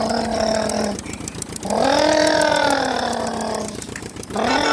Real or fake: real